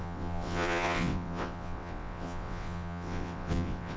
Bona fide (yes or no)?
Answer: no